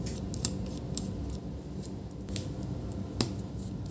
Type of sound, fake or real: real